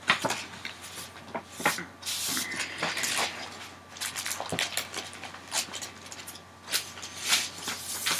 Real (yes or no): yes